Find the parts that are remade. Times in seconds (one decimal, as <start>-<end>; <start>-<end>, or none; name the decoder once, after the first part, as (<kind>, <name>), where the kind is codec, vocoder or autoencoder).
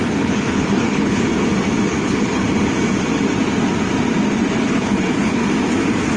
0.0-1.3 (codec, HILCodec); 1.9-2.4; 4.6-5.4